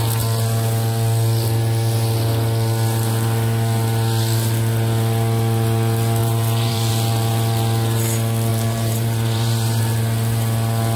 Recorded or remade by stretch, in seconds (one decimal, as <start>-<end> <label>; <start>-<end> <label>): 0.0-6.2 recorded; 6.2-6.9 remade; 6.9-8.5 recorded; 8.5-9.8 remade; 9.8-11.0 recorded